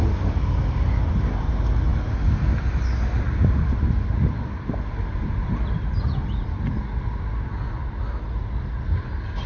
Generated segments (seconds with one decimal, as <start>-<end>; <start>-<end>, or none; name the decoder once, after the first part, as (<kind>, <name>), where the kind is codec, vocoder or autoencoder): none